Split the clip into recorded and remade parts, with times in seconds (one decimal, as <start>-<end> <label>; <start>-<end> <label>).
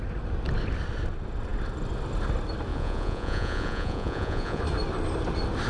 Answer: 0.0-2.7 recorded; 2.7-4.6 remade; 4.6-5.7 recorded